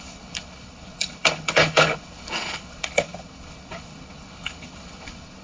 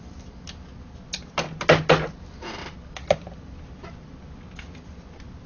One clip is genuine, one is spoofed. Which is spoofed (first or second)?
first